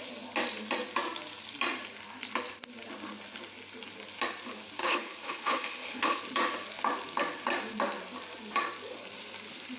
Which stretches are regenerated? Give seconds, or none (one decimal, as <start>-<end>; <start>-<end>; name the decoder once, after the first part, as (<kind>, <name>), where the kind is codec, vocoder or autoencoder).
4.8-6.2 (codec, HILCodec)